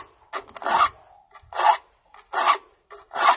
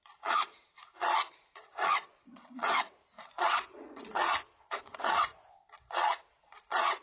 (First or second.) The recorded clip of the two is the first